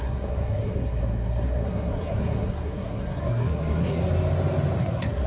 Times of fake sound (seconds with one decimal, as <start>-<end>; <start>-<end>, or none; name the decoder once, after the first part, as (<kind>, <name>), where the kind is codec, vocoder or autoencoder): 0.0-4.0 (codec, SNAC); 4.8-5.3

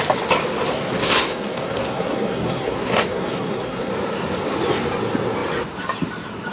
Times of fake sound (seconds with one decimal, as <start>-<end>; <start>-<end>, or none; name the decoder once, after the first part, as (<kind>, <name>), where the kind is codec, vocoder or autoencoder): 0.7-3.9 (codec, SNAC)